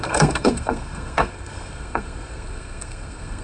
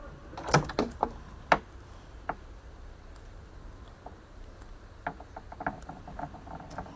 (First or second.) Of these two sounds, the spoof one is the first